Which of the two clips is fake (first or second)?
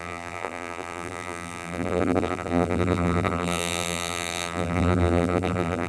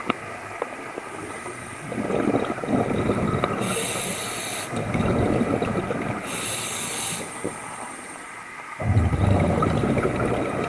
first